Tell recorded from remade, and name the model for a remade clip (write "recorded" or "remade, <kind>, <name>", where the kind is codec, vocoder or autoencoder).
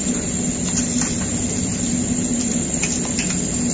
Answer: recorded